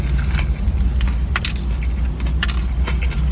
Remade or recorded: recorded